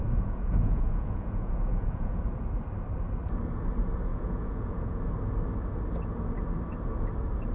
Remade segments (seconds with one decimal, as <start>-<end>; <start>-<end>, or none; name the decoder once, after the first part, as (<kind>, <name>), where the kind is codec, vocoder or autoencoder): 0.0-2.2 (vocoder, Vocos); 4.1-5.0